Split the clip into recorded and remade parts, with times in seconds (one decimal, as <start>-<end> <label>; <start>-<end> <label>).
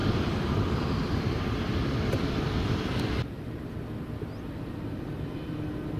0.0-3.6 remade; 3.6-6.0 recorded